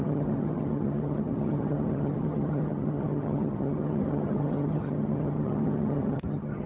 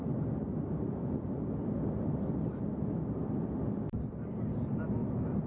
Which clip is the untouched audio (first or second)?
second